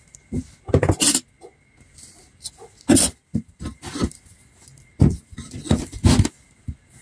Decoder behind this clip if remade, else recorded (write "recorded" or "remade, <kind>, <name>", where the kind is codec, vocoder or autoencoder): recorded